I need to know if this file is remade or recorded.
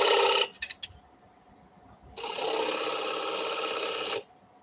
recorded